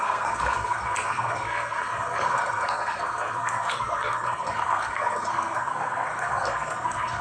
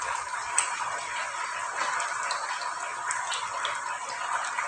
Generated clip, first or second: first